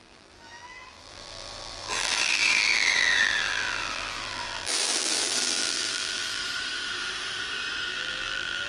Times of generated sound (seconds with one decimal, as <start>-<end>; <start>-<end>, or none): 0.0-6.4; 7.9-8.7